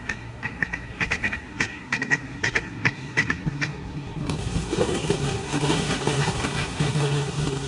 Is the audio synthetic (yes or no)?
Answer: yes